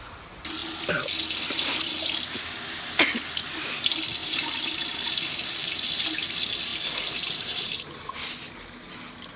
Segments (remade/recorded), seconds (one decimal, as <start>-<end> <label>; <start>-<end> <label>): 0.0-4.2 recorded; 4.2-5.9 remade; 5.9-6.7 recorded; 6.7-7.7 remade; 7.7-9.4 recorded